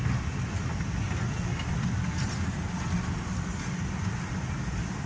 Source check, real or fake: real